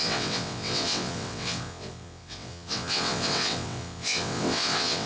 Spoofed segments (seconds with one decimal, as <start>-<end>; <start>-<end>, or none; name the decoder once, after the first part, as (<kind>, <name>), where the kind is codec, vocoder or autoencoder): 0.0-5.1 (vocoder, WaveNeXt)